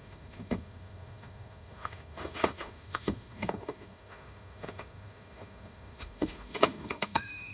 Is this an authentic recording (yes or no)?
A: no